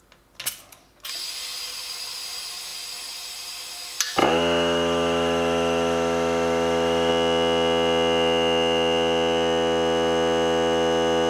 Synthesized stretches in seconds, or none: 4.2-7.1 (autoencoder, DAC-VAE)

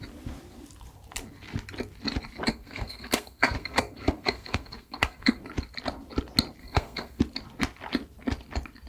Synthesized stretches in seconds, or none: 2.5-5.4 (codec, SNAC); 6.6-7.2

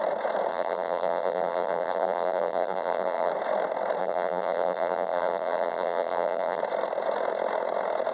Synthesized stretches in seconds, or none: 0.5-3.3 (vocoder, BigVGAN v2); 4.0-6.6

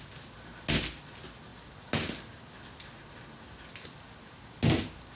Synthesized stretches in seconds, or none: none

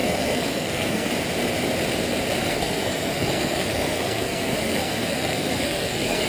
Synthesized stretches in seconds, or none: 0.0-1.1 (codec, SNAC); 2.4-6.3

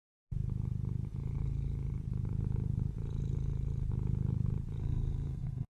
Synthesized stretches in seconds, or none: 4.8-5.8 (codec, SNAC)

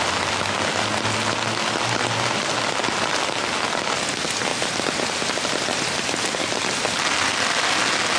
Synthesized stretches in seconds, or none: none

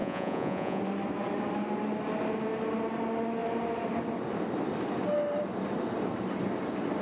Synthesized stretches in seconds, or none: 0.0-0.8 (vocoder, Vocos)